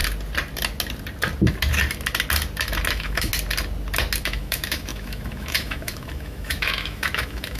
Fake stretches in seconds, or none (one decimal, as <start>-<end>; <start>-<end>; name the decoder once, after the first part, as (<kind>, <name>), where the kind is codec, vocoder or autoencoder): 2.9-3.3 (autoencoder, DAC-VAE); 4.2-7.6